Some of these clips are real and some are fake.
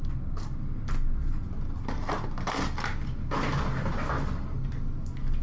real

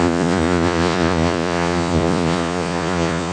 fake